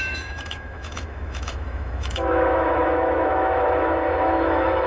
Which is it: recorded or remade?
remade